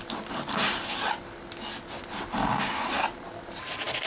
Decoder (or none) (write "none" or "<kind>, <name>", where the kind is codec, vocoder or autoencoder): none